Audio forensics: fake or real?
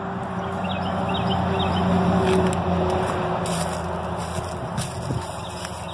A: real